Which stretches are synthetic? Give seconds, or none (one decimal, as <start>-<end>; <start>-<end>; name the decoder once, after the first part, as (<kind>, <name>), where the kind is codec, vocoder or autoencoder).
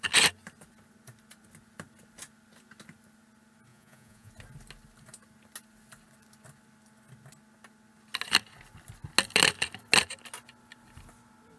3.7-4.3 (vocoder, Vocos)